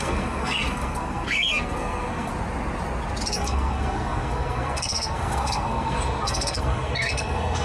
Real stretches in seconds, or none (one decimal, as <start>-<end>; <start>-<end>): 2.3-3.3

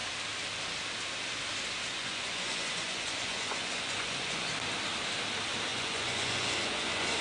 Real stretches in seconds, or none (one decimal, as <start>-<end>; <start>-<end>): 0.0-1.9; 4.5-5.7

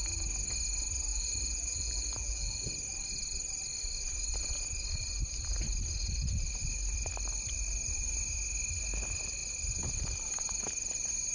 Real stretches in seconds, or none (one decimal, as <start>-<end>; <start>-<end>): 0.0-1.1; 2.7-11.3

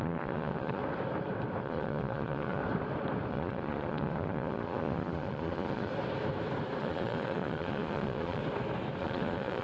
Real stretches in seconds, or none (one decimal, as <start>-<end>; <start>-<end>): 0.8-1.6; 2.6-3.3; 5.9-6.8; 8.4-9.0

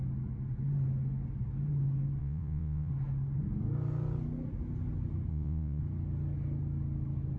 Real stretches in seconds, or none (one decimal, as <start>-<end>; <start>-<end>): 0.0-2.2; 2.9-5.3; 5.8-7.4

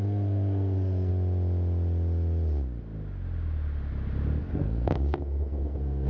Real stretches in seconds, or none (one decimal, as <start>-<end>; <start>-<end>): 1.1-4.4